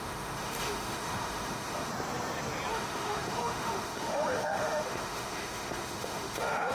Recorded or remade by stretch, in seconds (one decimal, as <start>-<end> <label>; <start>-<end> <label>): 0.0-1.9 remade; 1.9-2.7 recorded; 2.7-6.7 remade